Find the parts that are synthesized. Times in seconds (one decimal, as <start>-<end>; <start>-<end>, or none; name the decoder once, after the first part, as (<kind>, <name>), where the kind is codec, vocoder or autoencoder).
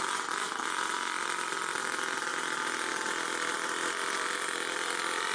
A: none